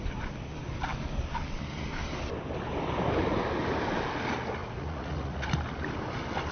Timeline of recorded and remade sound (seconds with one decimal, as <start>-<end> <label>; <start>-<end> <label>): 0.0-4.6 recorded; 4.6-5.5 remade; 5.5-6.5 recorded